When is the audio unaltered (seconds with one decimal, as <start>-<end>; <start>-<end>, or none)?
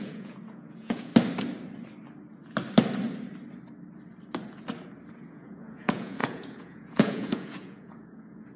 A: 1.1-5.1